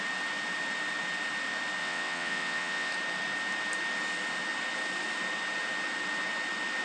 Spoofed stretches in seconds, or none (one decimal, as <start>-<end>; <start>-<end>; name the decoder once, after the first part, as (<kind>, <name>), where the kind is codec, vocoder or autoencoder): 1.8-2.9 (vocoder, WaveNeXt)